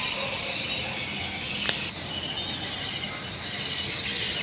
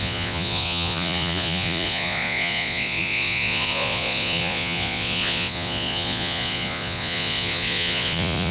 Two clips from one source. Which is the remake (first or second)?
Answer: second